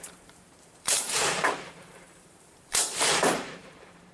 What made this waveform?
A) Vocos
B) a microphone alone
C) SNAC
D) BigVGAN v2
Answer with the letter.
D